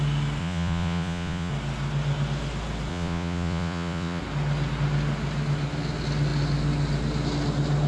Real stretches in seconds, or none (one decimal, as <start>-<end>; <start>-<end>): 0.0-0.4; 1.5-2.9; 4.2-7.9